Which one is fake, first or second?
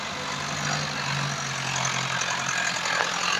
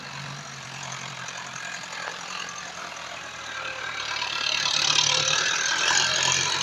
second